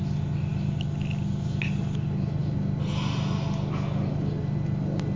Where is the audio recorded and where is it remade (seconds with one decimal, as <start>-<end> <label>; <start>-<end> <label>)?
0.0-5.2 recorded